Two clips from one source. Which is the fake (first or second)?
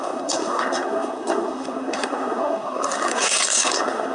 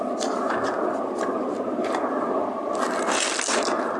first